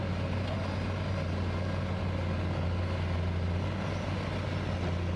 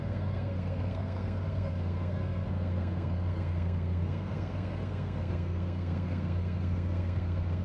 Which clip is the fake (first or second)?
second